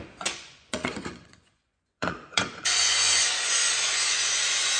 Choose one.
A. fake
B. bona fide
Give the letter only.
A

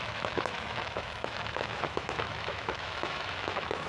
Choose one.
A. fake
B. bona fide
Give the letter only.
A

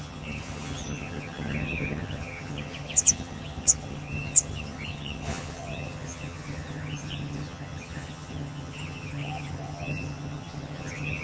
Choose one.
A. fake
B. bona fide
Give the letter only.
A